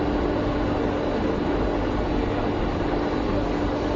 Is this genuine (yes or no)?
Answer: yes